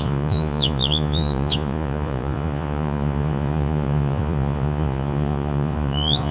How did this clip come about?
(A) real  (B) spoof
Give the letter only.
B